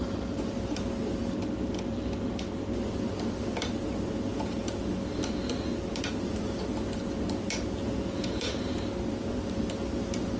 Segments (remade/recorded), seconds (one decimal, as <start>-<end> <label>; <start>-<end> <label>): 0.0-4.3 recorded; 4.3-5.0 remade; 5.0-7.8 recorded; 7.8-8.7 remade; 8.7-10.4 recorded